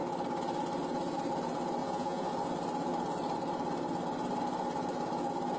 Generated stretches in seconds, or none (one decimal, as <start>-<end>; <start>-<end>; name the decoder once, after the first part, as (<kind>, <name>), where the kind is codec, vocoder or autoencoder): 1.8-2.3 (vocoder, Vocos)